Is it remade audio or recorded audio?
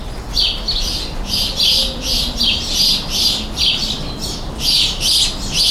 recorded